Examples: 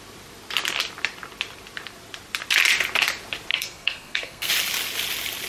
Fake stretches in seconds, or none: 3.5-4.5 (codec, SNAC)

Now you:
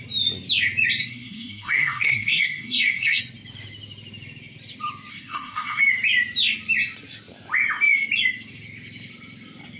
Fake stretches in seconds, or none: 1.0-3.2 (codec, SNAC); 5.1-5.8

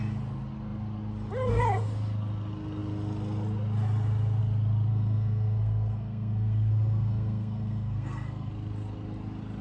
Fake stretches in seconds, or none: 4.9-8.5 (codec, SNAC)

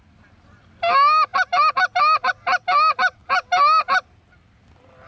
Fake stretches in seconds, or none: none